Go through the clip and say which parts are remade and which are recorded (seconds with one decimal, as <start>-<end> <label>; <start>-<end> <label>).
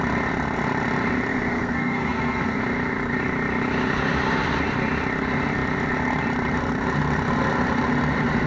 0.0-1.3 recorded; 1.3-2.6 remade; 2.6-8.5 recorded